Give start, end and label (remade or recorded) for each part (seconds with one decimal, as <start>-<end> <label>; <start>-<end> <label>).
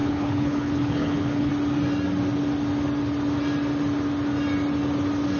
0.0-1.5 remade; 1.5-5.4 recorded